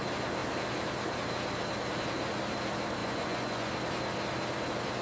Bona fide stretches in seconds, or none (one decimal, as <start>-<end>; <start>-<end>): 0.0-3.0; 3.7-5.0